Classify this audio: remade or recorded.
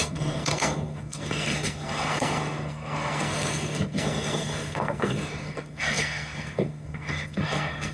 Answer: remade